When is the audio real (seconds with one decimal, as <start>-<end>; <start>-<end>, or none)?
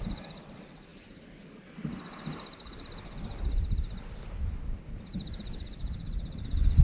0.0-6.8